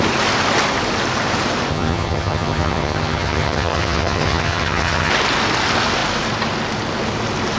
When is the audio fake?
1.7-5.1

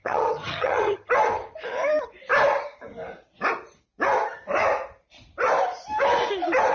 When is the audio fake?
0.0-1.1